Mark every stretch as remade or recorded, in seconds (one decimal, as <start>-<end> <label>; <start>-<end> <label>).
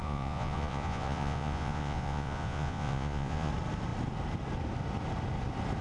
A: 0.0-3.5 remade; 3.5-5.8 recorded